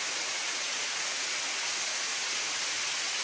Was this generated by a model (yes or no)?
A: yes